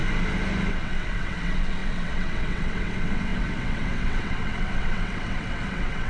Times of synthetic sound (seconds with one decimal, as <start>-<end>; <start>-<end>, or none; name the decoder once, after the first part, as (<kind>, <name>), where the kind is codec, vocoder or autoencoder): 0.7-6.1 (vocoder, WaveNeXt)